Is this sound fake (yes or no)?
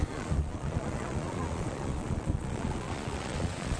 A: yes